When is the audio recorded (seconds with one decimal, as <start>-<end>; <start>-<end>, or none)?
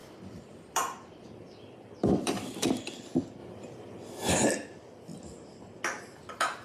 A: 3.0-6.6